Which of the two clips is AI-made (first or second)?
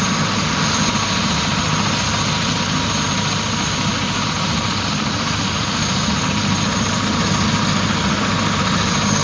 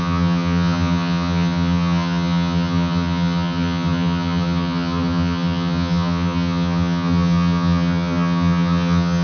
second